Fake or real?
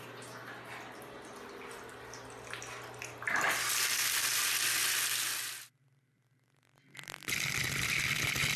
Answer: real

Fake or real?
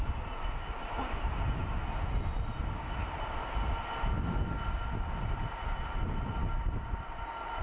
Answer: real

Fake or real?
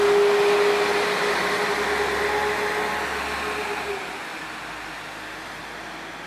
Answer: real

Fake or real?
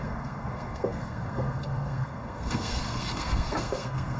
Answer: fake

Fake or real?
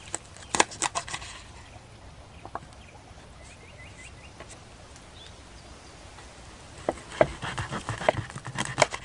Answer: real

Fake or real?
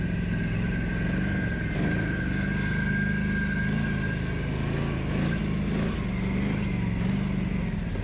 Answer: real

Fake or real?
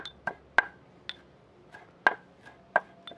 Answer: real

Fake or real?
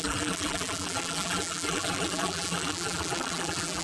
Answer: fake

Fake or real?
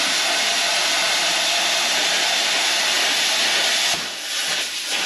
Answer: real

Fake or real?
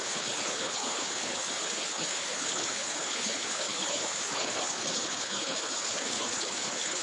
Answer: fake